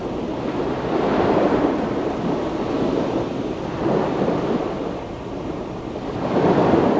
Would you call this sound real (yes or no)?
yes